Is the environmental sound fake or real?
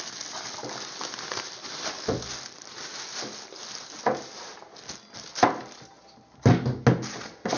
real